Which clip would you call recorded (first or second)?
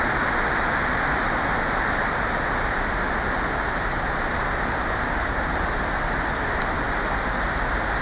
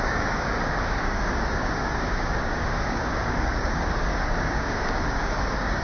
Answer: first